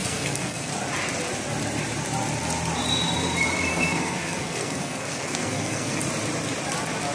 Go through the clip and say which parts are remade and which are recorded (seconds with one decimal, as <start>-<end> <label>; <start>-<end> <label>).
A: 0.0-0.7 remade; 0.7-3.7 recorded; 3.7-6.0 remade; 6.0-7.1 recorded